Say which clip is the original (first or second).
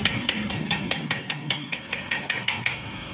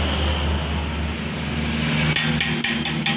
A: second